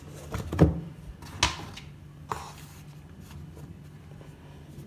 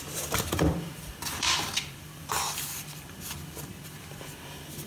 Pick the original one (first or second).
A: first